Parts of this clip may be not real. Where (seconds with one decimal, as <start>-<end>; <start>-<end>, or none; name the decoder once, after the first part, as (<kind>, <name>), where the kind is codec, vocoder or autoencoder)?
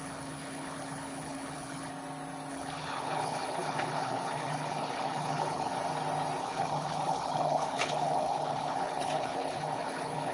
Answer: 0.0-1.9 (codec, HILCodec); 2.5-5.7; 6.4-10.3